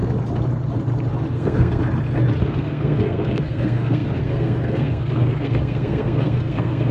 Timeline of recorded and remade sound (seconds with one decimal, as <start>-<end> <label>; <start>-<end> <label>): 0.0-1.3 recorded; 1.3-1.8 remade; 1.8-2.4 recorded; 2.4-6.9 remade